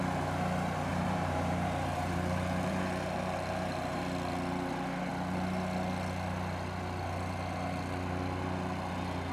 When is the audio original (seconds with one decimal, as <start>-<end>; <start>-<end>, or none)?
0.0-0.9; 4.0-9.3